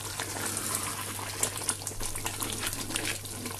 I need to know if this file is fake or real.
real